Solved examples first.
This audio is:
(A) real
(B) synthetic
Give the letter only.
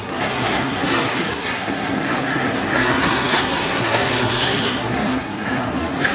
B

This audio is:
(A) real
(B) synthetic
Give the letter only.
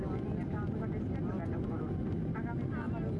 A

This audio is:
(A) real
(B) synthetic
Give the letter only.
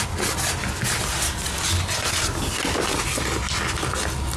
A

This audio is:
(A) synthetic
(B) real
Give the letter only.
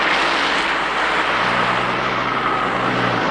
B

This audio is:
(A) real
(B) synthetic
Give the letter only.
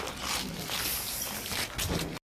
A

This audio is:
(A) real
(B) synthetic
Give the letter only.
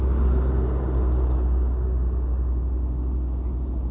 A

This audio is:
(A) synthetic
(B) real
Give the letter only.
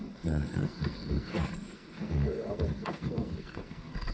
A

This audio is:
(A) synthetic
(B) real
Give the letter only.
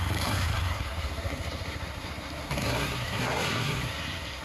A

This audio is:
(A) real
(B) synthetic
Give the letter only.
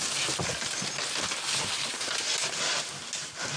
A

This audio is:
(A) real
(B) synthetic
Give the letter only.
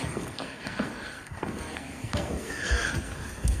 B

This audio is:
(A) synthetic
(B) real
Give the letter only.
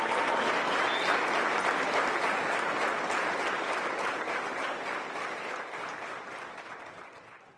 B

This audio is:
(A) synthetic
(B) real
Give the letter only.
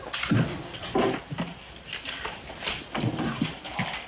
B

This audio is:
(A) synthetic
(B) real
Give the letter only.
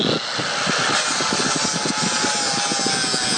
B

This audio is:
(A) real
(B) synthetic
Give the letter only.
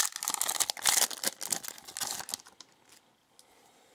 A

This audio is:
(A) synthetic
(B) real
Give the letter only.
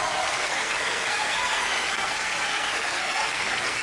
A